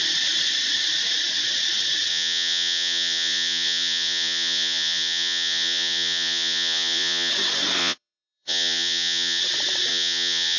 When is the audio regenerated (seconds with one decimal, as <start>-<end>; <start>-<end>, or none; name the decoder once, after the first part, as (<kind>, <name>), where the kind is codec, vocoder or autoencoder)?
2.1-7.3 (vocoder, Vocos); 7.8-9.4; 9.9-10.6